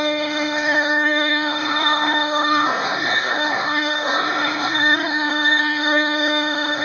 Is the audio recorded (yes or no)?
no